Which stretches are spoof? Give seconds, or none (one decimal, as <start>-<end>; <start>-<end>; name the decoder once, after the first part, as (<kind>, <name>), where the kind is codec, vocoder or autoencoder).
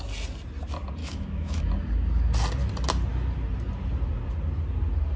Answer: 1.0-1.6 (autoencoder, DAC-VAE)